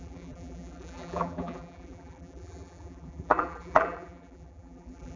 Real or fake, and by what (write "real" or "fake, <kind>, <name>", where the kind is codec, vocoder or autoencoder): fake, vocoder, BigVGAN v2